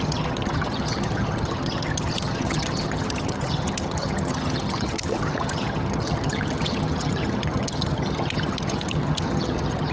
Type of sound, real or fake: fake